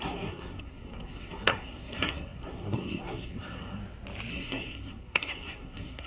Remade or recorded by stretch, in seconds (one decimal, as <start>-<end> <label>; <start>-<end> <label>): 0.0-3.8 remade; 3.8-4.3 recorded; 4.3-6.1 remade